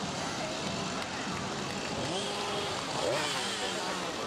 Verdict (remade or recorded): recorded